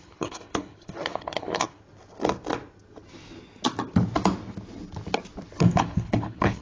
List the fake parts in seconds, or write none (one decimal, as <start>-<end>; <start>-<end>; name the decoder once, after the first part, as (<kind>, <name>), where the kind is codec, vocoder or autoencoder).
0.0-1.8 (codec, HILCodec); 5.6-6.6